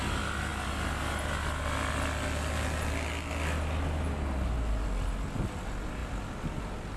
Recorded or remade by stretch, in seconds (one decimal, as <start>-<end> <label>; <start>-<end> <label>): 0.0-7.0 recorded